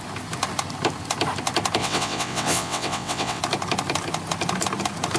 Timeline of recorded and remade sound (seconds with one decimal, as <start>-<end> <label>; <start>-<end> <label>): 0.0-1.8 recorded; 1.8-3.4 remade; 3.4-5.2 recorded